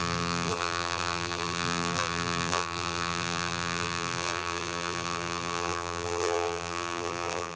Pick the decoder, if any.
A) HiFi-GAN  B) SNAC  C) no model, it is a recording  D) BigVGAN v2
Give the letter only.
D